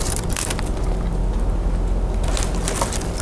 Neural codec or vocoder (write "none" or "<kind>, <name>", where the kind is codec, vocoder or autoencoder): none